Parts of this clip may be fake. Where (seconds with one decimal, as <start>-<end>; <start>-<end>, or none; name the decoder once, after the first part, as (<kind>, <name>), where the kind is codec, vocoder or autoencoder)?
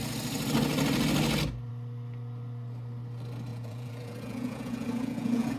3.5-5.6 (vocoder, Vocos)